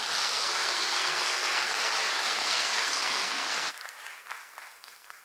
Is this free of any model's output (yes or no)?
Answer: no